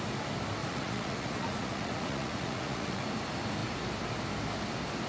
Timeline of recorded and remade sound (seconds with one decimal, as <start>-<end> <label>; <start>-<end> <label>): 0.0-0.6 recorded; 0.6-3.0 remade; 3.0-5.1 recorded

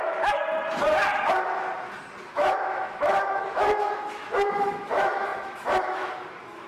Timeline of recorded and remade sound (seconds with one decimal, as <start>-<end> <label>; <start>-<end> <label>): 0.0-0.4 remade; 0.4-2.3 recorded; 2.3-6.7 remade

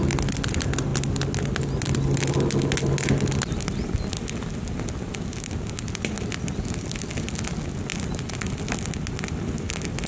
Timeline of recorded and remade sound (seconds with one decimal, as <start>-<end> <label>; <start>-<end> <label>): 0.0-10.1 recorded

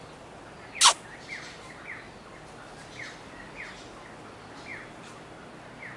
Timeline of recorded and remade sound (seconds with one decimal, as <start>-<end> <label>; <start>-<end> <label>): 0.0-6.0 recorded

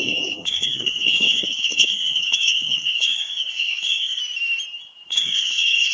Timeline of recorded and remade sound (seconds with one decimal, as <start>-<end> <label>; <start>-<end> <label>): 0.0-4.2 remade; 4.2-5.1 recorded; 5.1-5.9 remade

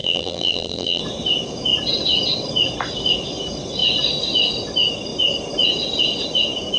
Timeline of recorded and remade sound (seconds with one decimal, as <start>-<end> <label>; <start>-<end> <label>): 0.0-1.0 remade; 1.0-6.8 recorded